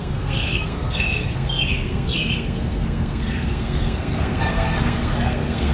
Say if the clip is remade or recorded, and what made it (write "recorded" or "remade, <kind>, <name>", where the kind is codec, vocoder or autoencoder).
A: remade, codec, SNAC